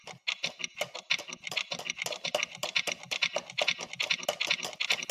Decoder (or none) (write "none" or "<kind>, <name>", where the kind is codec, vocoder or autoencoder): none